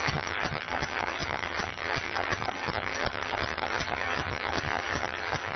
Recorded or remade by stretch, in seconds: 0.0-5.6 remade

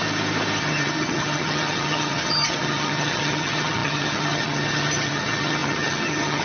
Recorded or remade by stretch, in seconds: 0.0-0.6 recorded; 0.6-6.4 remade

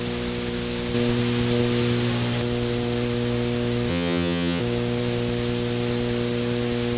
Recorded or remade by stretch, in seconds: 0.0-3.9 recorded; 3.9-4.6 remade; 4.6-7.0 recorded